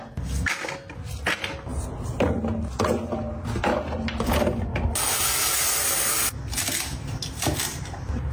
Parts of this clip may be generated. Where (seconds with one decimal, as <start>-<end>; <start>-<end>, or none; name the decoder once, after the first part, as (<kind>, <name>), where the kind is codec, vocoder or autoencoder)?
none